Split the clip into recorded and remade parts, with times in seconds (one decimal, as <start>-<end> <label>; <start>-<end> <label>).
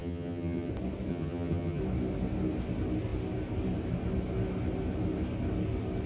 0.0-0.7 remade; 0.7-1.1 recorded; 1.1-1.8 remade; 1.8-6.1 recorded